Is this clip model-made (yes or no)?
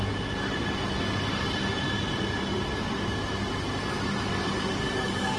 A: no